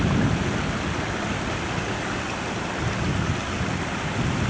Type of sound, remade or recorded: recorded